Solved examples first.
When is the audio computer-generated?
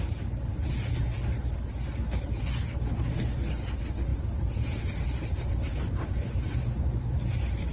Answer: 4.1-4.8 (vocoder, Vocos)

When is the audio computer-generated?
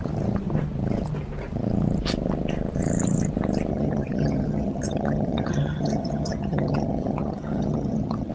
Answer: 3.7-8.3 (vocoder, HiFi-GAN)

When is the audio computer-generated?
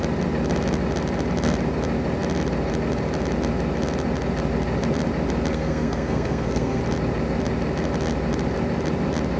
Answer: 5.5-6.8 (codec, SNAC)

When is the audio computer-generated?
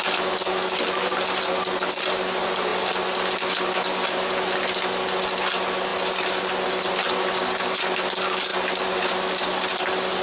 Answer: none